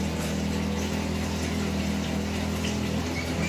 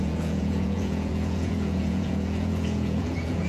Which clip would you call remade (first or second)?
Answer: second